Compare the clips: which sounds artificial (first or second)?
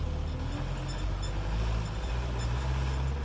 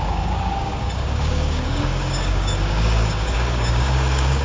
second